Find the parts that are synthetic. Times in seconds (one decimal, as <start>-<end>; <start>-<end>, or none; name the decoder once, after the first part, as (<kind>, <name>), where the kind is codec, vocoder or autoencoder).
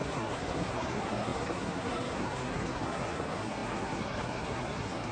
0.0-5.1 (codec, SNAC)